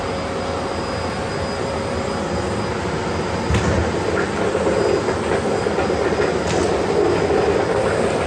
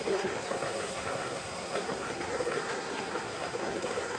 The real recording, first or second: first